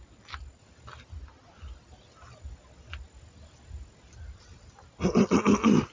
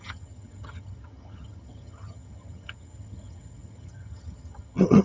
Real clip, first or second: first